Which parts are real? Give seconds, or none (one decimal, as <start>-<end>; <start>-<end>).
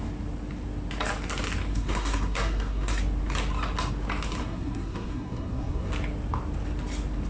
0.0-1.7; 3.0-4.4; 5.9-7.3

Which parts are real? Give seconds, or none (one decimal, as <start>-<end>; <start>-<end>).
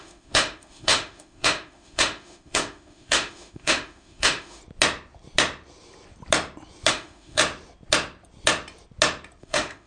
4.6-6.9; 7.4-9.4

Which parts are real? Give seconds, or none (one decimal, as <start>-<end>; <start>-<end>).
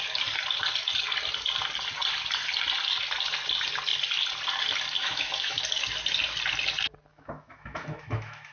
0.0-5.0; 5.6-7.1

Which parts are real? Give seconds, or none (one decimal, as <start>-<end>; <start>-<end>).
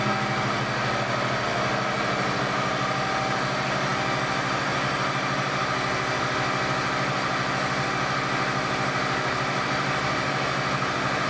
0.0-11.3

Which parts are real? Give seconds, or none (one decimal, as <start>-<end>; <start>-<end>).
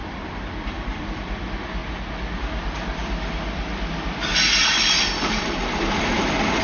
1.8-2.3